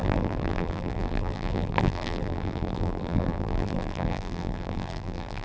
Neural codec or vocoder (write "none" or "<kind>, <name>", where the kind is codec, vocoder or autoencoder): vocoder, BigVGAN v2